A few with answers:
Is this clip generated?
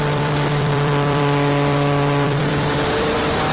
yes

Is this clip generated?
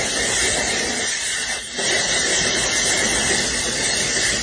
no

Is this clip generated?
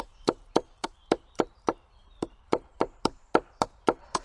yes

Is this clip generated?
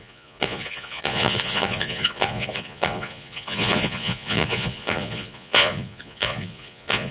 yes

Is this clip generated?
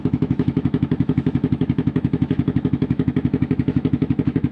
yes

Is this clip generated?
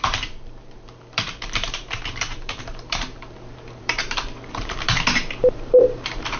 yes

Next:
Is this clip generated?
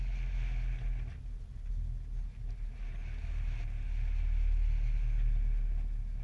no